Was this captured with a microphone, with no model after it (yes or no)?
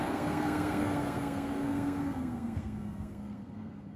no